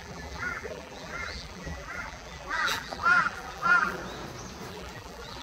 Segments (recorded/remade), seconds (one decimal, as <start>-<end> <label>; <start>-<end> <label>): 0.0-4.0 remade; 4.0-4.7 recorded; 4.7-5.4 remade